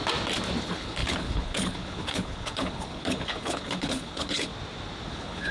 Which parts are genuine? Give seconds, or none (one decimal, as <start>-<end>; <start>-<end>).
0.0-0.6; 4.5-5.1